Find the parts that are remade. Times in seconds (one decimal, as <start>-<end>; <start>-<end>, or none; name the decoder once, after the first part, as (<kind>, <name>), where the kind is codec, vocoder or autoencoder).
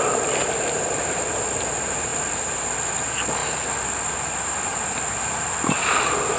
none